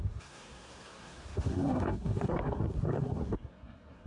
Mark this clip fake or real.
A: fake